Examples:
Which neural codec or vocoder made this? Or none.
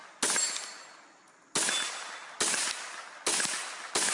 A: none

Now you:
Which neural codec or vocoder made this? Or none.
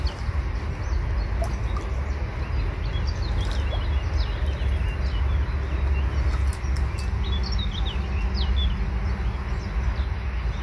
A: none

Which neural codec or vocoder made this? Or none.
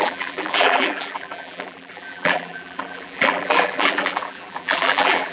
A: vocoder, BigVGAN v2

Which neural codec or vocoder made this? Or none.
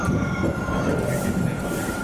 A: vocoder, BigVGAN v2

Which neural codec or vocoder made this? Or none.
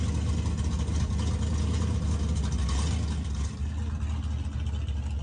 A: none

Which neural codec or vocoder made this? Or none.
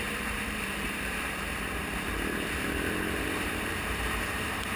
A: vocoder, BigVGAN v2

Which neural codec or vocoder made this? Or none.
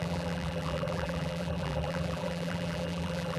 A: vocoder, BigVGAN v2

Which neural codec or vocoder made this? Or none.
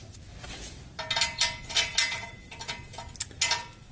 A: none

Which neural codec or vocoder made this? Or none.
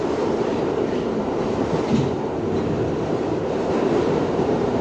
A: vocoder, BigVGAN v2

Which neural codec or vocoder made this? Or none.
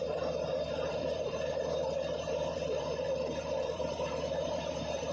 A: vocoder, BigVGAN v2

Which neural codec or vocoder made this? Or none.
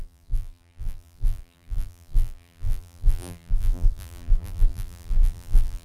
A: vocoder, BigVGAN v2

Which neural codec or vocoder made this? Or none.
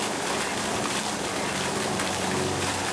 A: vocoder, BigVGAN v2